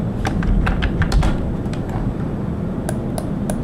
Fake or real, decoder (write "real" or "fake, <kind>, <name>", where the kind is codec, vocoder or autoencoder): real